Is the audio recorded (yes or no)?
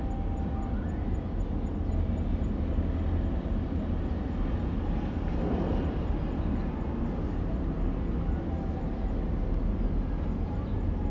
yes